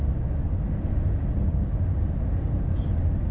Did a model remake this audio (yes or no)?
no